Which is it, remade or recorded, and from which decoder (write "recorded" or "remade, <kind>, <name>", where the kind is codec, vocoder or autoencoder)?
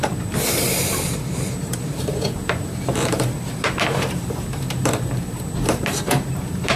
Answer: remade, vocoder, BigVGAN v2